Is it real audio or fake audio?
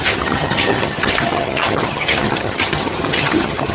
fake